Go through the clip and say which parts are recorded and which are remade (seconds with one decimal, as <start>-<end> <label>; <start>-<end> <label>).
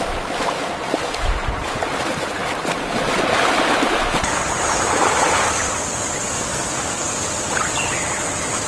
0.0-6.3 recorded; 6.3-7.1 remade; 7.1-8.7 recorded